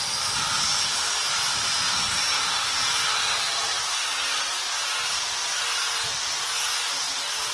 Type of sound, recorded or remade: recorded